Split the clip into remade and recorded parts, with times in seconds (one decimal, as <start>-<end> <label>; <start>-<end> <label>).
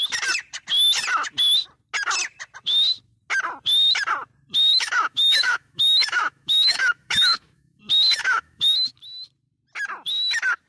0.0-4.7 recorded; 4.7-7.8 remade; 7.8-8.2 recorded; 8.2-9.0 remade; 9.0-10.7 recorded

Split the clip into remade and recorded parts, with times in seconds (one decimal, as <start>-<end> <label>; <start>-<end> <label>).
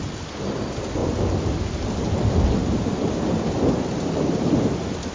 0.0-1.0 recorded; 1.0-1.7 remade; 1.7-2.6 recorded; 2.6-5.1 remade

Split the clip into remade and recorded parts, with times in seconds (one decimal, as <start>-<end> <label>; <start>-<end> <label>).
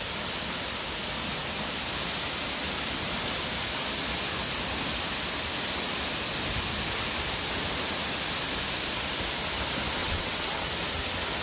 0.0-10.0 recorded; 10.0-10.7 remade; 10.7-11.4 recorded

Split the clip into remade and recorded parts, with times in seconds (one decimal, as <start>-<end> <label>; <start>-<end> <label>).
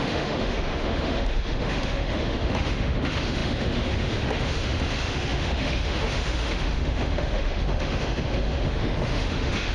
0.0-9.7 remade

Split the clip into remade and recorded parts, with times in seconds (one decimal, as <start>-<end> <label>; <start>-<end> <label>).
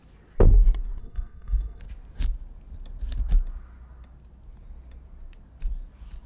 0.0-1.0 recorded; 1.0-1.8 remade; 1.8-6.3 recorded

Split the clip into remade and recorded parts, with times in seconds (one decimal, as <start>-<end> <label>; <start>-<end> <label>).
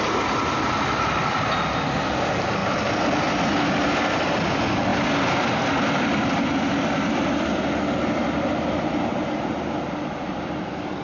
0.0-2.6 recorded; 2.6-4.4 remade; 4.4-4.9 recorded; 4.9-7.6 remade; 7.6-11.0 recorded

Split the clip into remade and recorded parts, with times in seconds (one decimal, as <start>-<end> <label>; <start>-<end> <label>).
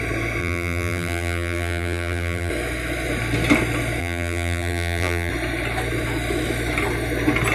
0.0-0.4 recorded; 0.4-2.5 remade; 2.5-4.0 recorded; 4.0-5.3 remade; 5.3-7.5 recorded